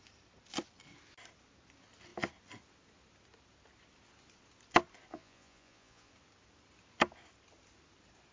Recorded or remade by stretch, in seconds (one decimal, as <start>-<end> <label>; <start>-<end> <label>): 0.0-5.1 recorded; 5.1-6.1 remade; 6.1-8.3 recorded